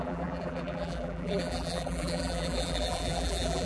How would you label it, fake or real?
fake